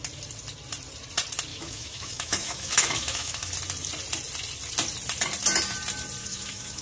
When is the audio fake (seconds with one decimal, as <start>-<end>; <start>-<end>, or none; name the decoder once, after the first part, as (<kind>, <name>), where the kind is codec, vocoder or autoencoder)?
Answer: 1.5-3.5 (autoencoder, DAC-VAE); 6.2-6.8